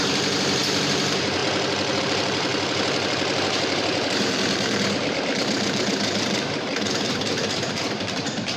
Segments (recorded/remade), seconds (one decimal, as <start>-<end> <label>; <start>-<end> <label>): 0.0-1.4 remade; 1.4-2.0 recorded; 2.0-2.5 remade; 2.5-3.8 recorded; 3.8-8.6 remade